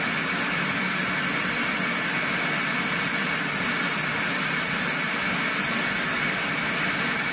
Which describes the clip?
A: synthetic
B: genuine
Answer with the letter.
B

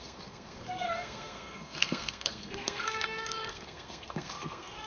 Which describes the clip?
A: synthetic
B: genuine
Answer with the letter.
A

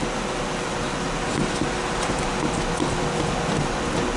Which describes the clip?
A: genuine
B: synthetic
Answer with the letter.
A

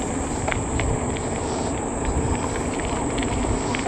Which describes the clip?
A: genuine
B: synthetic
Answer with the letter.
A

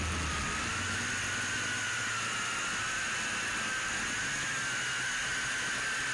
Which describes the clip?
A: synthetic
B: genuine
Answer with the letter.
B